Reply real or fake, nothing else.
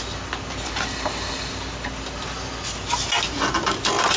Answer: real